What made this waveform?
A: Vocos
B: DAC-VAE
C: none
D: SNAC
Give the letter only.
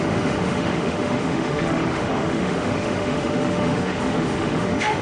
B